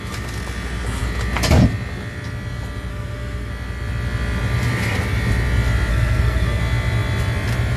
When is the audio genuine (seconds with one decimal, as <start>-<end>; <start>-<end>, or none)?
0.0-2.9; 3.5-5.9; 6.6-7.8